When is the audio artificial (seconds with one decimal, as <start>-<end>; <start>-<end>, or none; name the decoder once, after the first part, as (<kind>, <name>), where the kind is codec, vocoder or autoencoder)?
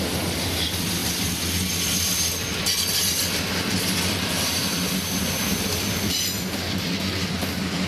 none